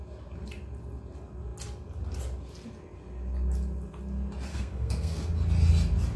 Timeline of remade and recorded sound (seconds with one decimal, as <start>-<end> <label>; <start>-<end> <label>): 0.0-4.5 recorded; 4.5-5.3 remade; 5.3-6.2 recorded